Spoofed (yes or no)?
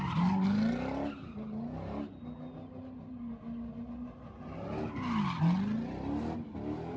no